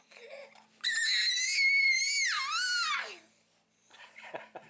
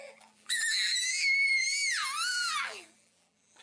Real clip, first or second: first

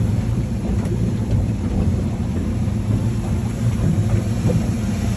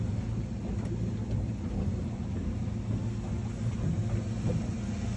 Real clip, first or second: second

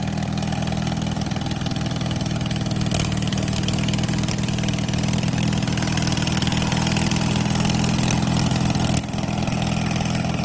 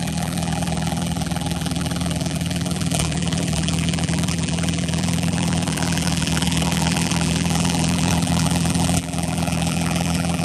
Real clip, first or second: first